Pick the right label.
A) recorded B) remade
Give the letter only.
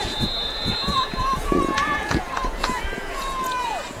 B